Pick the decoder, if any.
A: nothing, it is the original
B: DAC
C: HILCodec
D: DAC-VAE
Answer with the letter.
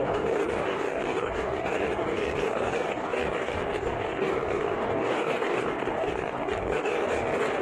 B